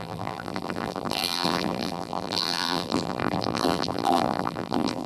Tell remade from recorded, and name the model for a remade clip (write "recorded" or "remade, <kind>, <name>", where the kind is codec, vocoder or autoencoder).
remade, vocoder, BigVGAN v2